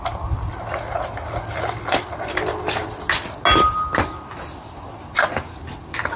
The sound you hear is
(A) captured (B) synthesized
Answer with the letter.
A